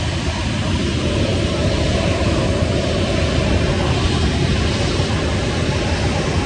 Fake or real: real